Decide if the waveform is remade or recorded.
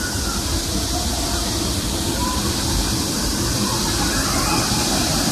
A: recorded